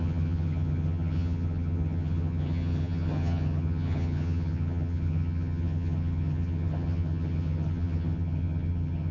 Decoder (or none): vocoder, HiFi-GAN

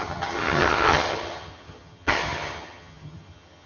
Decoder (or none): vocoder, HiFi-GAN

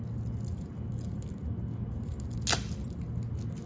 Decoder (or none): none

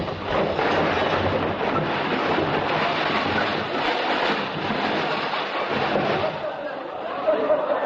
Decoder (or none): none